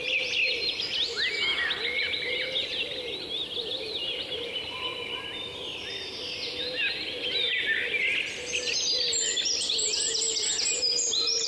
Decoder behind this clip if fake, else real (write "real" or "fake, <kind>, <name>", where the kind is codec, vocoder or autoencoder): real